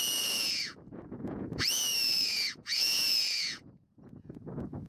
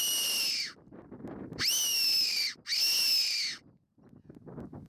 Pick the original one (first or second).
second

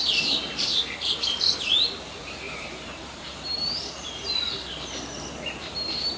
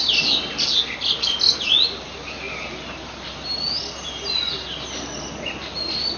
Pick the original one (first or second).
second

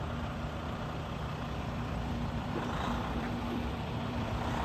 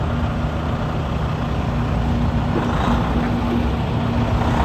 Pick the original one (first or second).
second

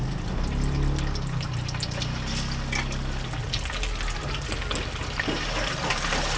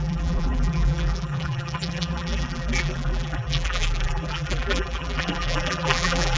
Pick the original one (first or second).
first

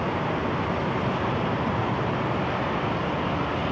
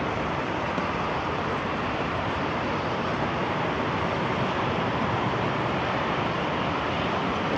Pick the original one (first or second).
first